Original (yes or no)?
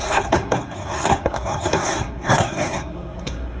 no